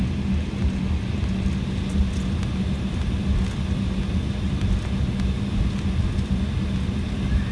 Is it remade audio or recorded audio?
recorded